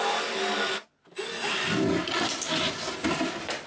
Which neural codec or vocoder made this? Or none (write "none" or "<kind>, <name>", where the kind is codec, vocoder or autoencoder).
none